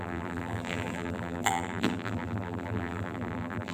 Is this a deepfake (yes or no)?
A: yes